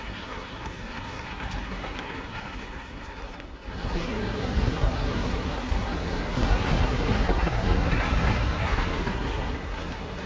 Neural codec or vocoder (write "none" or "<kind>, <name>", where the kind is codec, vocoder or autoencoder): codec, SNAC